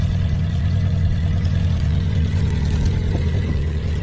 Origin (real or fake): fake